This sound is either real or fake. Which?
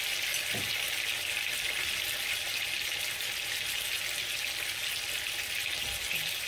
real